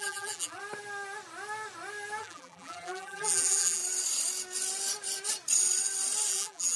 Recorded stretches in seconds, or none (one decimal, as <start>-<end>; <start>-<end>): 0.6-2.2; 3.8-6.3